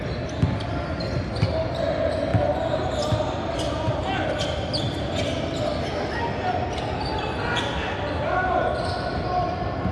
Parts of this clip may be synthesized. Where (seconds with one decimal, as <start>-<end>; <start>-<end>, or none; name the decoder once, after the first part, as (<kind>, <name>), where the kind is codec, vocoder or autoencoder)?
none